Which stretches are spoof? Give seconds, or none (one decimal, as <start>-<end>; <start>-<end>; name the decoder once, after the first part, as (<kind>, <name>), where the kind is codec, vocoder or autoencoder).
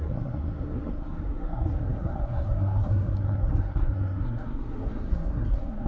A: 0.0-5.9 (codec, SNAC)